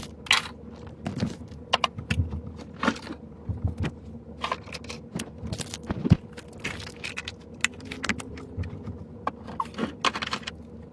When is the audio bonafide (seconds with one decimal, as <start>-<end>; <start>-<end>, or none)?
0.0-10.9